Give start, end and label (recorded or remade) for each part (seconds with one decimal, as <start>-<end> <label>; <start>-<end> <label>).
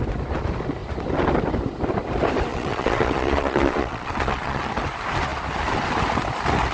0.0-2.5 recorded; 2.5-4.7 remade; 4.7-6.7 recorded